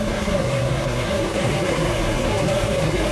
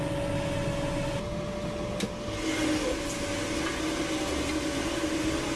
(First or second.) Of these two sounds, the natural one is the second